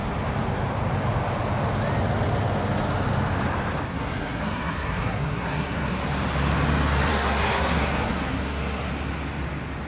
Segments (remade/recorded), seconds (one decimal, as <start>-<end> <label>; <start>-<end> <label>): 0.0-3.9 recorded; 3.9-5.9 remade; 5.9-7.1 recorded; 7.1-8.9 remade; 8.9-9.9 recorded